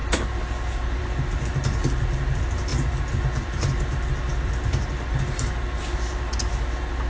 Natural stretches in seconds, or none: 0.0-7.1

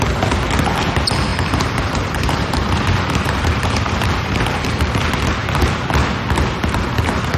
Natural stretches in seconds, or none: 0.0-1.3; 4.9-7.4

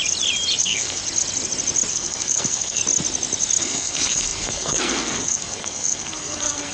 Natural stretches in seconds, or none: 0.0-0.6; 1.0-1.9; 2.8-3.6

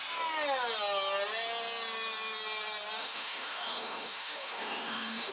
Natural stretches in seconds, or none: 0.0-3.0

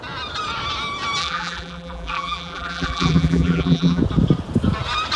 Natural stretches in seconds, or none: 0.0-1.2; 4.0-5.2